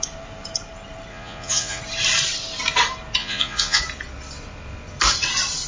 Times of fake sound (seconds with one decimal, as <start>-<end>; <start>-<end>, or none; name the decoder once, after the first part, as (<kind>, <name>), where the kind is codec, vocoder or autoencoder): 1.1-1.8 (vocoder, Vocos); 3.2-3.8